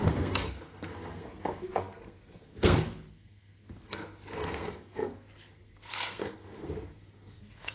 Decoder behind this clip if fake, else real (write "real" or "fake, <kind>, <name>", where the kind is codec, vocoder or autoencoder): fake, codec, SNAC